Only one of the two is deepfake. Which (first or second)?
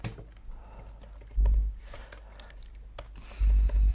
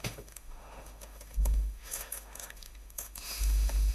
second